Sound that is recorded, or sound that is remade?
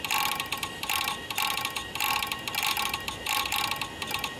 recorded